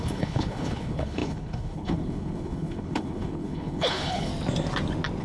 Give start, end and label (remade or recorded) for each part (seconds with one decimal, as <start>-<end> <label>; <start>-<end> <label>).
0.0-4.3 remade; 4.3-5.2 recorded